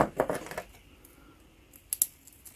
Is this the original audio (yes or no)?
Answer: yes